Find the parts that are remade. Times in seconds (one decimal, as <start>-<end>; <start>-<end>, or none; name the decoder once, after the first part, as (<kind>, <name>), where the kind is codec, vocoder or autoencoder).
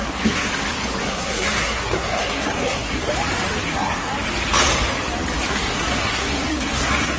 0.0-0.5 (codec, SNAC); 1.0-3.1; 3.6-4.1; 5.5-7.2